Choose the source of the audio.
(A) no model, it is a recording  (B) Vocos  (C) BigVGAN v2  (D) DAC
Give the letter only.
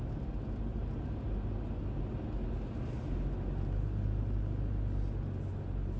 A